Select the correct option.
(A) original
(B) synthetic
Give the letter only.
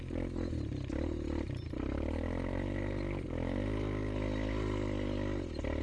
A